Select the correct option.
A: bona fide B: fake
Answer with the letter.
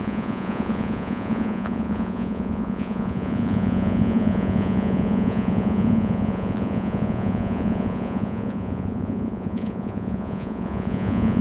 B